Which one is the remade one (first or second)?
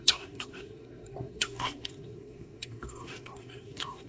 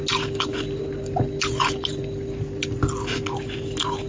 first